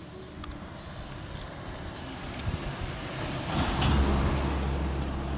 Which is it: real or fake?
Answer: real